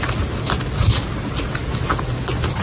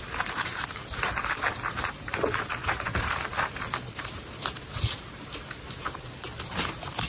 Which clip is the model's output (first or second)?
second